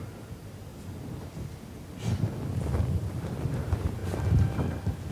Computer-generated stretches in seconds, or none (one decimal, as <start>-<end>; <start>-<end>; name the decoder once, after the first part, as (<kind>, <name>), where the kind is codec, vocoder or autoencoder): 0.0-0.7 (vocoder, BigVGAN v2); 3.5-4.0